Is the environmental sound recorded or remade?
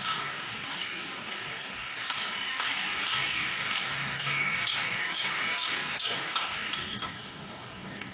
remade